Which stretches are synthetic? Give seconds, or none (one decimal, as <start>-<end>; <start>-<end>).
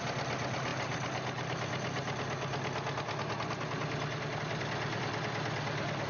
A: 0.0-0.7; 4.4-6.1